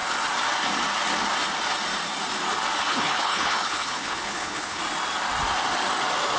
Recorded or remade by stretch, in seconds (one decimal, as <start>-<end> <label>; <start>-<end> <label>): 0.0-2.9 recorded; 2.9-4.8 remade; 4.8-6.4 recorded